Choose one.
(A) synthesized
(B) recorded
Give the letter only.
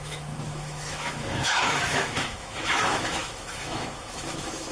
A